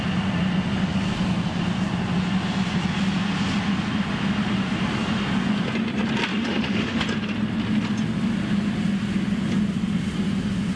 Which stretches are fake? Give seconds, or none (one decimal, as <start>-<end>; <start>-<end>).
6.3-7.0